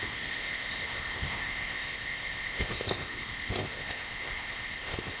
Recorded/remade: remade